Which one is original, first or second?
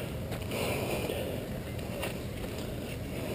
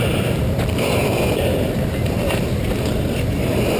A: first